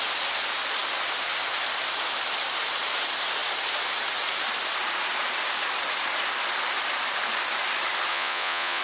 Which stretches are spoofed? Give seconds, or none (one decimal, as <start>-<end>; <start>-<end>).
8.1-8.8